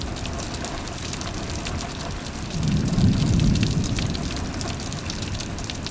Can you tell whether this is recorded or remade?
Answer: remade